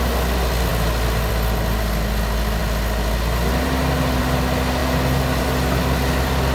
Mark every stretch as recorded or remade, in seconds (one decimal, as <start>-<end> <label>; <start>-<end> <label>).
0.0-6.5 recorded

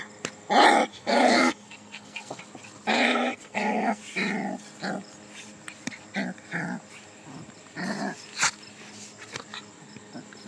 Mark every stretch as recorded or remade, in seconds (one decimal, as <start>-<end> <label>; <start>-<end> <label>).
0.0-0.9 recorded; 0.9-2.4 remade; 2.4-2.9 recorded; 2.9-4.0 remade; 4.0-10.5 recorded